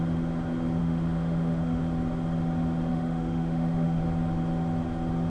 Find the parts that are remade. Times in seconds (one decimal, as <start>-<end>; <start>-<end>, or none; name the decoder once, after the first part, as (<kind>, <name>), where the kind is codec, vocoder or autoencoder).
0.8-1.8 (autoencoder, DAC-VAE); 2.9-4.0